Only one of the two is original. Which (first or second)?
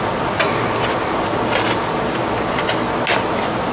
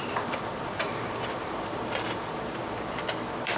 first